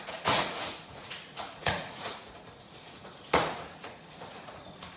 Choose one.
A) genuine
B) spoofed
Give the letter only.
B